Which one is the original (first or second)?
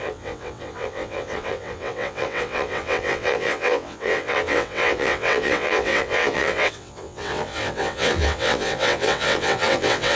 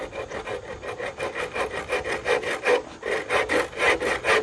second